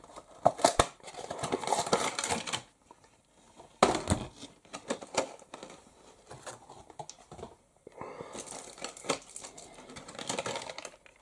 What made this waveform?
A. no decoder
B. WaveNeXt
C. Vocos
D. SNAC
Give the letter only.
A